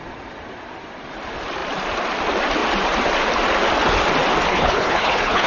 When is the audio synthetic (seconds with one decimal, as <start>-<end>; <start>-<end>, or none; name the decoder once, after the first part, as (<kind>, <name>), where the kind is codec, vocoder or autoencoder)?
4.5-5.5 (codec, HILCodec)